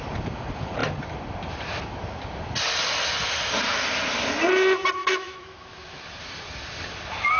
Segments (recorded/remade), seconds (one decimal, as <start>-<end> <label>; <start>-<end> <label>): 0.0-5.0 recorded; 5.0-6.0 remade; 6.0-7.4 recorded